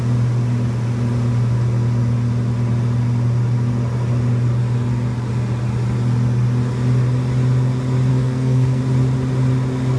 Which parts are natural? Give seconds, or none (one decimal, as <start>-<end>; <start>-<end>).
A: 0.0-8.1; 8.8-10.0